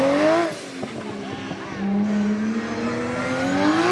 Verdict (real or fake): real